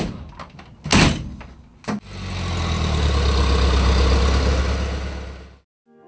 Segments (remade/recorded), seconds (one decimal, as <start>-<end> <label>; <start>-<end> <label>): 0.0-6.1 recorded